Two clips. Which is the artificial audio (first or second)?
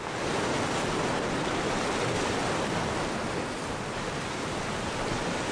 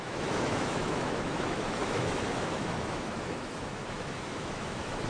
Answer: second